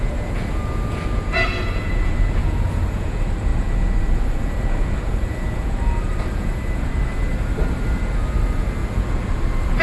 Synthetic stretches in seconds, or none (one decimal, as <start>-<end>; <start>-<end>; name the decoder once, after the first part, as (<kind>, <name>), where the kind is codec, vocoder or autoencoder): 0.0-9.8 (vocoder, Vocos)